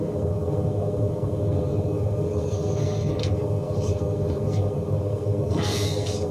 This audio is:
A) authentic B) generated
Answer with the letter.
B